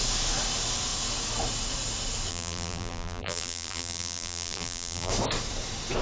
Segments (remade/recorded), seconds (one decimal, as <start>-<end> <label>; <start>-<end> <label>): 0.0-2.3 recorded; 2.3-5.1 remade; 5.1-6.0 recorded